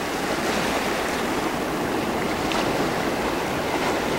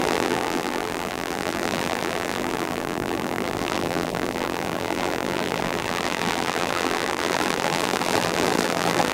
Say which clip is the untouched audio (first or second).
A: first